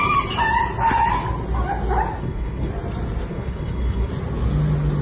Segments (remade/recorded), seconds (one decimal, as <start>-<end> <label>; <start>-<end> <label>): 0.0-2.2 recorded; 2.2-2.7 remade; 2.7-3.3 recorded; 3.3-4.1 remade; 4.1-5.0 recorded